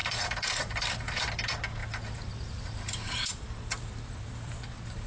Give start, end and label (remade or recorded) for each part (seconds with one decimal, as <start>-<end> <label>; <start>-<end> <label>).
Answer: 0.0-1.2 remade; 1.2-1.8 recorded; 1.8-5.1 remade